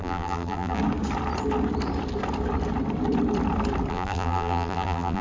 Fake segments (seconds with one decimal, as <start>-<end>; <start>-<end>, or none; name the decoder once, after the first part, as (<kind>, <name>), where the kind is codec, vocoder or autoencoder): 0.0-0.8 (vocoder, BigVGAN v2); 3.9-5.2